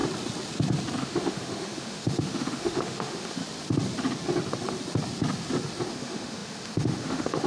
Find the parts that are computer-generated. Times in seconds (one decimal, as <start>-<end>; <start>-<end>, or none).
1.0-3.4; 5.9-7.5

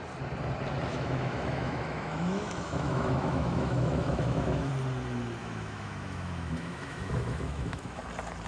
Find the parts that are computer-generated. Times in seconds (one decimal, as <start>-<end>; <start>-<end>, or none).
0.9-4.7; 5.4-8.0

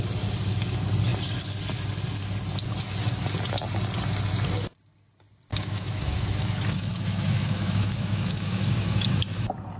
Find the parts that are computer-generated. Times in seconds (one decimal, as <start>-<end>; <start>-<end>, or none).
5.5-9.2

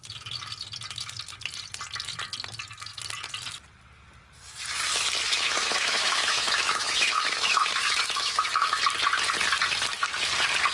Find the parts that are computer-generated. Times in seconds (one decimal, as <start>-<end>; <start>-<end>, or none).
5.3-8.8